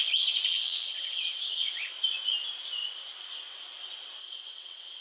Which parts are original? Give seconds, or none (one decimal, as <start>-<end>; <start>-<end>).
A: 0.0-0.5; 1.7-4.2